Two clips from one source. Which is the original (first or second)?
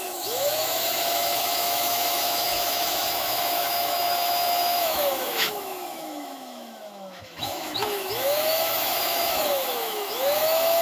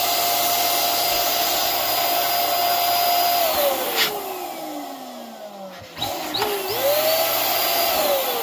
second